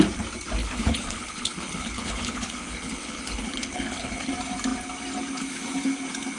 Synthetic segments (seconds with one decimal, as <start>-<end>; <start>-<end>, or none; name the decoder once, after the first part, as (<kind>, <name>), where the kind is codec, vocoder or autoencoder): 0.6-4.3 (codec, HILCodec)